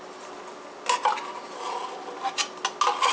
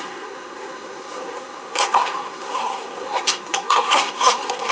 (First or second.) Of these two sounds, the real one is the first